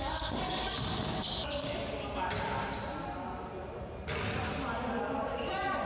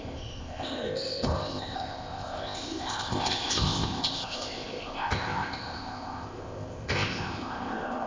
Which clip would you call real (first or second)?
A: first